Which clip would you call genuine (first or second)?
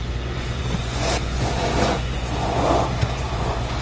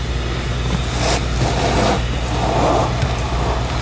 second